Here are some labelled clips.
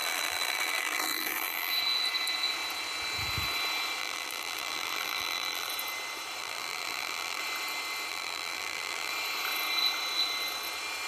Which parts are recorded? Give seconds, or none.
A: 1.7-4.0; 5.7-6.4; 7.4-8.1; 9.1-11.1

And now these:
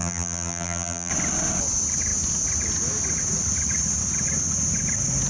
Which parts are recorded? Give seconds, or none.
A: 1.1-5.3

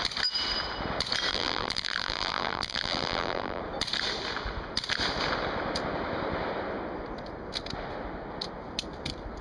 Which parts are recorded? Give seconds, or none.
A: 0.0-1.3; 3.6-9.4

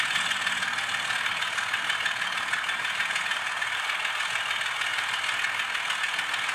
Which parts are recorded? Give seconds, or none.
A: 0.0-6.5

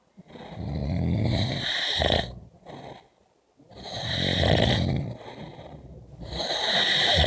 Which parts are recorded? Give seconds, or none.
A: 0.0-0.8; 2.7-5.5; 6.4-7.3

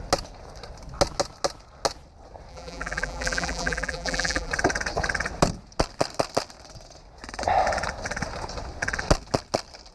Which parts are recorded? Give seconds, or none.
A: 0.0-2.5; 4.5-9.9

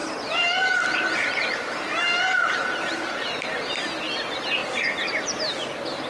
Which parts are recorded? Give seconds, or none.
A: 3.7-4.6; 5.4-6.1